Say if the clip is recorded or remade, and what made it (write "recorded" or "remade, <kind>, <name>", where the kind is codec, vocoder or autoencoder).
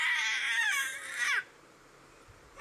recorded